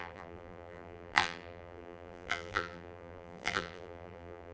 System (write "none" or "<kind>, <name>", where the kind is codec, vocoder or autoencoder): vocoder, BigVGAN v2